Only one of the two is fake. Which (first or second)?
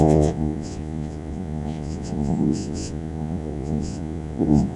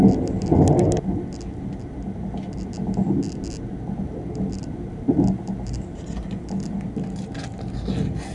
first